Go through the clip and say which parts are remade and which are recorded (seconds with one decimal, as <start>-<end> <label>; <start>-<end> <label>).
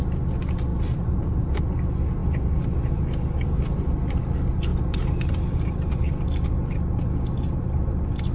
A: 0.0-0.7 recorded; 0.7-1.6 remade; 1.6-4.7 recorded; 4.7-6.1 remade; 6.1-8.3 recorded